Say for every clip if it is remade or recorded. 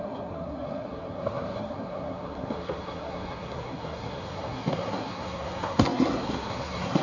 remade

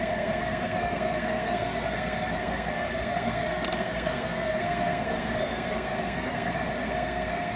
remade